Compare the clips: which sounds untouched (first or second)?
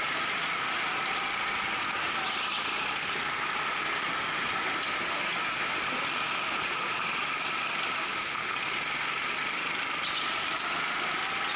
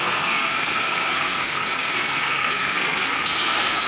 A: first